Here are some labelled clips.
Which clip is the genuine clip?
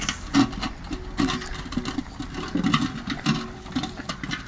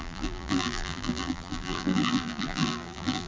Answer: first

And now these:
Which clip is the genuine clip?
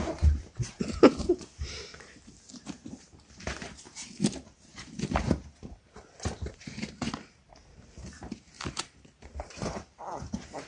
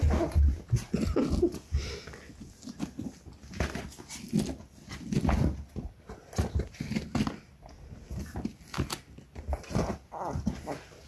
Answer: second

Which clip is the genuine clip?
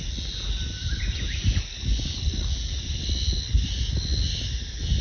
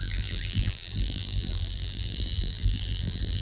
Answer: first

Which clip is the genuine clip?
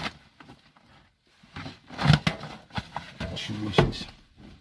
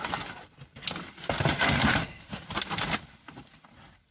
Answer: first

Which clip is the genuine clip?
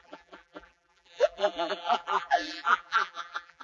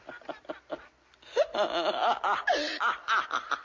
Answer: second